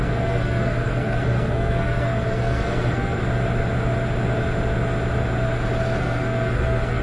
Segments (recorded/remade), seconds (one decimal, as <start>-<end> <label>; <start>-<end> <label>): 0.0-3.2 remade; 3.2-6.0 recorded; 6.0-7.0 remade